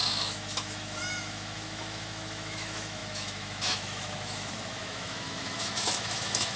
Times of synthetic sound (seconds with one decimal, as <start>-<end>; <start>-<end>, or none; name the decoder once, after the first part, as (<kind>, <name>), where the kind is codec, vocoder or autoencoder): 0.0-6.6 (autoencoder, DAC-VAE)